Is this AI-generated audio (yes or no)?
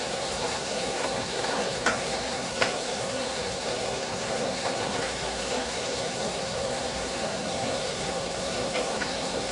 yes